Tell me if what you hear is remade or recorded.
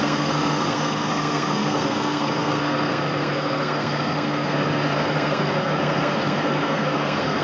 remade